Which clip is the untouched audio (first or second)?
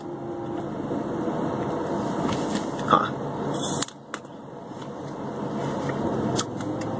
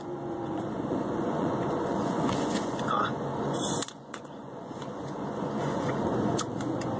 first